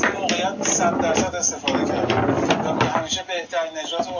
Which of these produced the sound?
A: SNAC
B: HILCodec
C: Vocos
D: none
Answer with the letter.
D